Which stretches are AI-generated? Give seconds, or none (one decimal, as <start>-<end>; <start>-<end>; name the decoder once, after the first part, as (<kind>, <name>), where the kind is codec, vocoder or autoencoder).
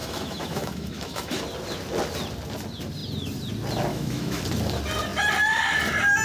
0.0-1.4 (autoencoder, DAC-VAE); 3.9-4.4